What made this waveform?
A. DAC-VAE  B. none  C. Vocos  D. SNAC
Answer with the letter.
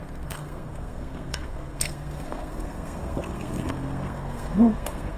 D